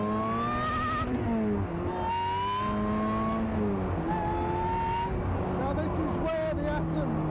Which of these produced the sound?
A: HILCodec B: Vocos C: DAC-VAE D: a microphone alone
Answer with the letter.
D